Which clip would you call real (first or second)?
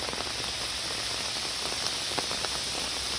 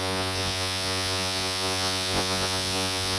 first